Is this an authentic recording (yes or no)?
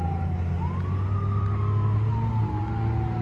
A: yes